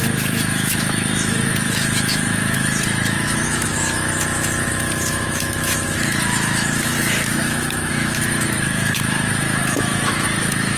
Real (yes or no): no